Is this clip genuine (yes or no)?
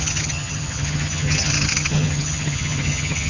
no